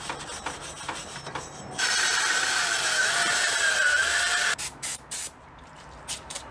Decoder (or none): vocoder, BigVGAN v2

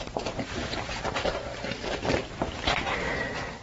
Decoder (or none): vocoder, BigVGAN v2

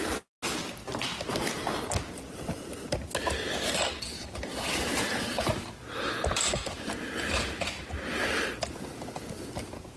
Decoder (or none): none